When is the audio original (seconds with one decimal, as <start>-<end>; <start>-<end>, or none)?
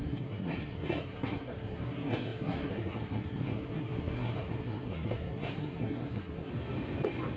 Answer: 6.5-7.4